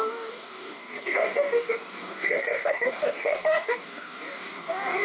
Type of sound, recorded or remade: remade